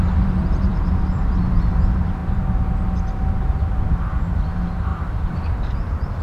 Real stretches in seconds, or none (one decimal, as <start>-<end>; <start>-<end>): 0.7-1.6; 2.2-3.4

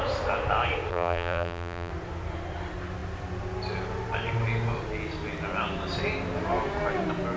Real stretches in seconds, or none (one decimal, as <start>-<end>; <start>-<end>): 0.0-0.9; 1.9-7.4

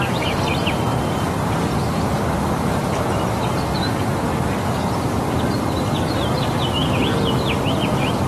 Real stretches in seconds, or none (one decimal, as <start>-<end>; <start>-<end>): 6.8-7.4

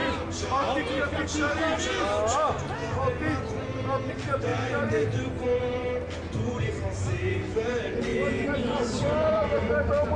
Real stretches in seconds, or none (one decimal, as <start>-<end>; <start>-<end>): 0.0-4.5; 5.1-8.1; 9.7-10.2

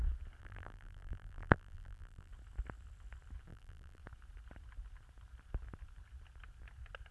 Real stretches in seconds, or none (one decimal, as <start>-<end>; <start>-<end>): 0.0-0.4; 2.3-3.5; 4.0-7.1

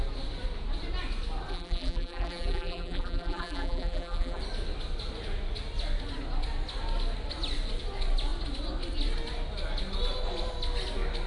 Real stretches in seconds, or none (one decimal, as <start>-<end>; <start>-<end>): 0.0-1.5; 4.4-11.3